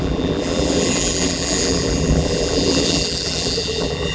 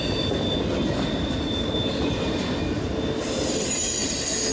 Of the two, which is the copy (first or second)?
first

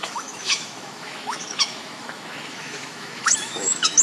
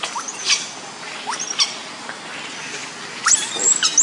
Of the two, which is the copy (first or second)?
first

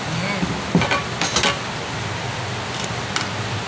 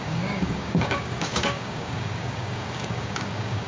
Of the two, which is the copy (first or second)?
second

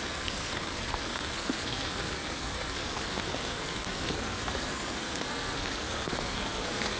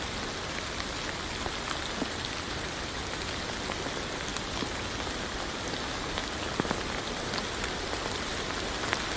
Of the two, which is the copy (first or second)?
first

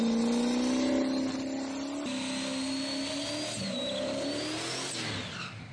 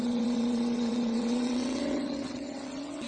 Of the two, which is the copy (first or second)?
second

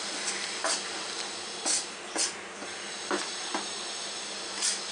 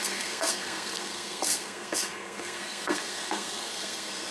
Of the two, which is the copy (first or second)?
second